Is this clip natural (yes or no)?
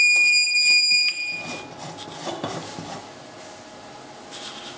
yes